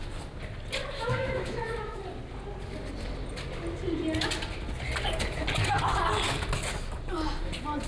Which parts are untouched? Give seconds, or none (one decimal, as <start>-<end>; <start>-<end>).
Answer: 0.0-0.8; 2.0-7.9